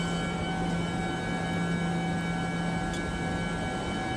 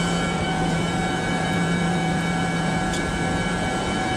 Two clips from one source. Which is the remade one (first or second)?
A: second